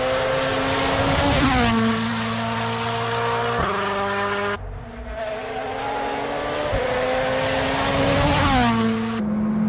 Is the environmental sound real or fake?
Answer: real